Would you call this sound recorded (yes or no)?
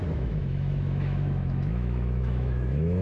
no